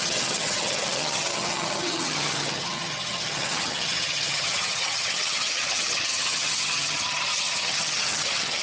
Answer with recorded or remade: remade